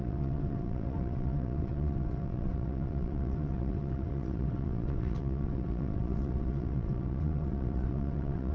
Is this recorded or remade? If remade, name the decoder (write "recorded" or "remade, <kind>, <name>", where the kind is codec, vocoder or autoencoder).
remade, vocoder, WaveNeXt